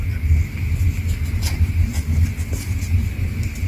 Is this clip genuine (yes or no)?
yes